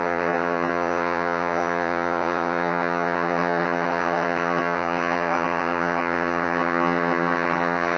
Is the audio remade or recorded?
remade